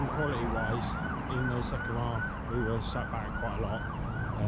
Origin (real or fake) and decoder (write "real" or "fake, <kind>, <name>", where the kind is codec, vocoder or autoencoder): real